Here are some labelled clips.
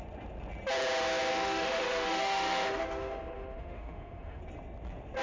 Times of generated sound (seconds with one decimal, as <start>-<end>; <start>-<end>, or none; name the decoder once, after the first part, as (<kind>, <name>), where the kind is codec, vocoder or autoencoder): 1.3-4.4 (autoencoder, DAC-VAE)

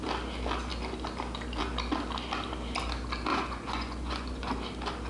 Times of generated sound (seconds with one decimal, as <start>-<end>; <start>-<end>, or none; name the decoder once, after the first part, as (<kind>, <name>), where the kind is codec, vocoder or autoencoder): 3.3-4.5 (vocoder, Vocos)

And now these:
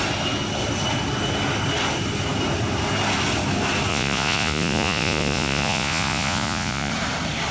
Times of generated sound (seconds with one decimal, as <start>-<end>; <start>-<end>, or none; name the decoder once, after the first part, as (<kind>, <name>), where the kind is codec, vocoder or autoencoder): 3.9-6.9 (vocoder, Vocos)

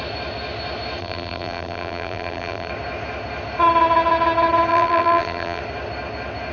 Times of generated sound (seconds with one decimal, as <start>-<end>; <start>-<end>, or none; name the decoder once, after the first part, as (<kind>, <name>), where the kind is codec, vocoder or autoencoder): 1.0-2.7 (vocoder, BigVGAN v2); 4.7-5.6